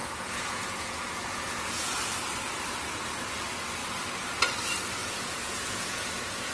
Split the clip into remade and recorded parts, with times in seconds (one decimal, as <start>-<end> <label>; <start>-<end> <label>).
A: 0.0-2.0 remade; 2.0-5.0 recorded; 5.0-6.5 remade